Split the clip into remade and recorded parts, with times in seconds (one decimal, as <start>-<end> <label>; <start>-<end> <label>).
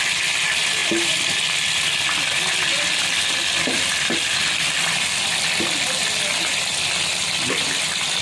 0.0-8.2 recorded